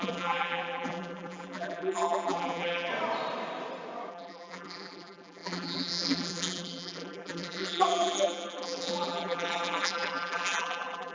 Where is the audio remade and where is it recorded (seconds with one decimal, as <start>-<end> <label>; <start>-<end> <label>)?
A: 0.0-2.9 remade; 2.9-4.1 recorded; 4.1-11.1 remade